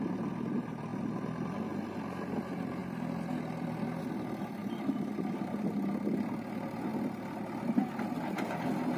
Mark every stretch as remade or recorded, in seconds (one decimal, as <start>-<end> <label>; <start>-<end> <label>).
0.0-9.0 recorded